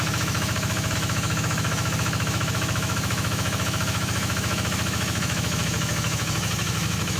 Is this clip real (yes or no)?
no